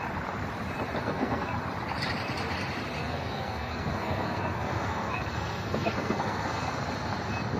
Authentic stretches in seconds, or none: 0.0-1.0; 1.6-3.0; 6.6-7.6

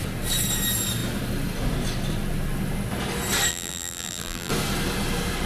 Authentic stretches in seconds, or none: 0.0-3.5; 4.5-5.5

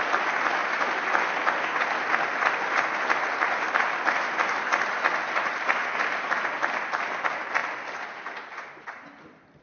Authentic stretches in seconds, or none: 0.0-9.6

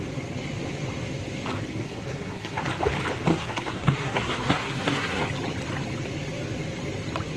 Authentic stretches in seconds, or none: 0.0-1.8; 2.6-3.3; 5.3-7.4

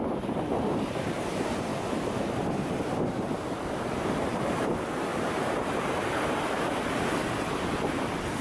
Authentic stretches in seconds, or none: 1.7-2.8